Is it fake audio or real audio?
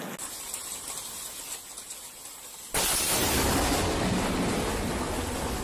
real